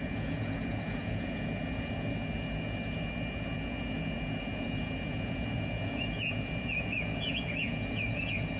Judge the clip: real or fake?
fake